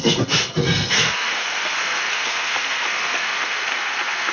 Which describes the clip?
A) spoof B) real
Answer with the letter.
A